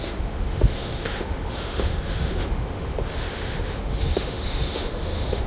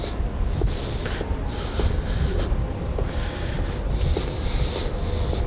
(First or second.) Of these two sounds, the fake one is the first